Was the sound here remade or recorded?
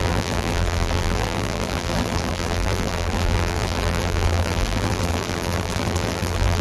remade